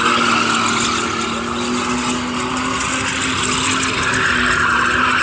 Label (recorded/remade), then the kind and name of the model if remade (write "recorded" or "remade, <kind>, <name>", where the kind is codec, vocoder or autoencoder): recorded